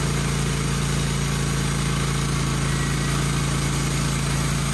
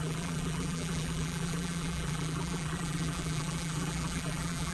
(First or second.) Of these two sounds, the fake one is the second